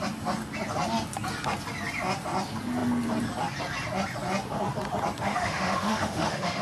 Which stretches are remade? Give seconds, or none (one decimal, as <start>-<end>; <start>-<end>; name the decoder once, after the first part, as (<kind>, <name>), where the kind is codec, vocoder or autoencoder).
5.2-6.6 (autoencoder, DAC-VAE)

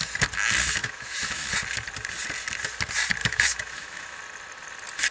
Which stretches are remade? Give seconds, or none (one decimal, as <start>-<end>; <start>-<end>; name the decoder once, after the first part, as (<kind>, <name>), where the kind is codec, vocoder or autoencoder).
0.8-1.5 (autoencoder, DAC-VAE); 3.2-4.2

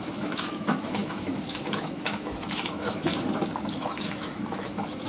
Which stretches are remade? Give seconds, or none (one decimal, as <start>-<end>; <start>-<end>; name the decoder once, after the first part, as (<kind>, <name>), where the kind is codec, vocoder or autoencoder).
0.0-3.1 (autoencoder, DAC-VAE); 3.7-5.1

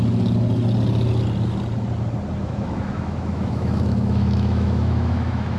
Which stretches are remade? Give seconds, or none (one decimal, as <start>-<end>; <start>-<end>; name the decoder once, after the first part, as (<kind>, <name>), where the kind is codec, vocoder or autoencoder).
2.4-5.6 (autoencoder, DAC-VAE)

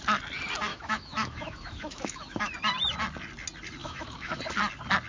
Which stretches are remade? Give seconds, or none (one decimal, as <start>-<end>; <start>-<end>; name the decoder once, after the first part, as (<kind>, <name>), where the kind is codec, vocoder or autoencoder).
0.7-2.5 (autoencoder, DAC-VAE); 3.8-4.4

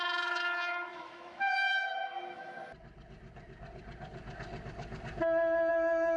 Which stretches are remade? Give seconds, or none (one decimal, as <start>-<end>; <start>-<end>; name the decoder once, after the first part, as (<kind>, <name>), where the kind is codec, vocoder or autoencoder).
0.0-2.6 (autoencoder, DAC-VAE); 5.7-6.2

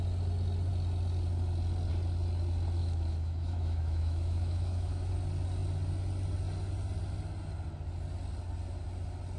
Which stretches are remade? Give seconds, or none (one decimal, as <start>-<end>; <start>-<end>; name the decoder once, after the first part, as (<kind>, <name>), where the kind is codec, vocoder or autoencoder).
2.8-5.1 (autoencoder, DAC-VAE)